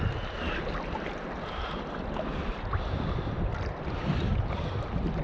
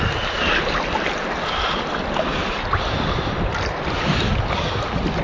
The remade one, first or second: second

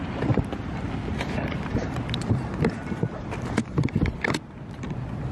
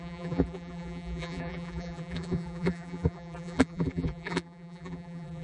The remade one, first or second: second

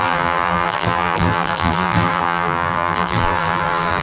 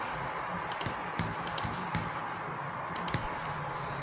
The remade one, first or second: first